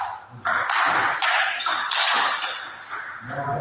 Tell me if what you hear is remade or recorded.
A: recorded